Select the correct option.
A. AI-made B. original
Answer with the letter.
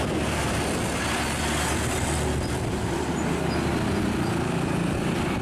B